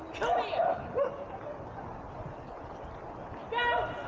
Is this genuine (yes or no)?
yes